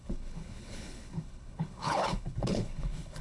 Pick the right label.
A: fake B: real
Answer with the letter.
A